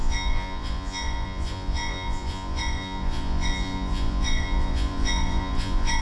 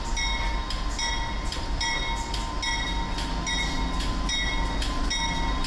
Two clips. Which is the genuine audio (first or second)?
second